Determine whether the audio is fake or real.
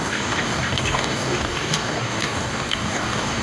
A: fake